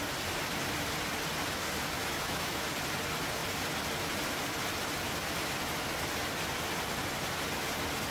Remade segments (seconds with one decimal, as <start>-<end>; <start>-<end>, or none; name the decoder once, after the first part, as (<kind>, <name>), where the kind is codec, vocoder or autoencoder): 2.0-2.6 (autoencoder, DAC-VAE)